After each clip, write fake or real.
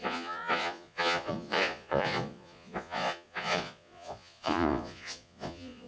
fake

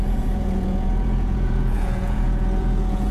fake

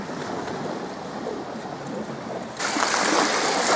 real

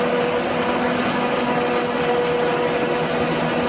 real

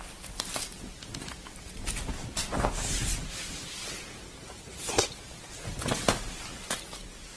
real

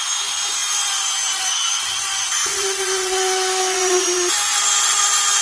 fake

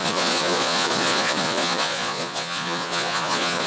fake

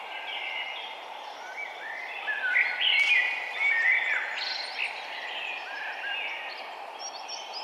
real